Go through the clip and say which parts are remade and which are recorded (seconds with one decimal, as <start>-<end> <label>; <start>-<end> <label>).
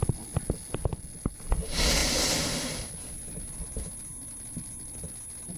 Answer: 0.0-5.6 recorded